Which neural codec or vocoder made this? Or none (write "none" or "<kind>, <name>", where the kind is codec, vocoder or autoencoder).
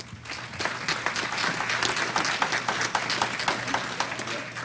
none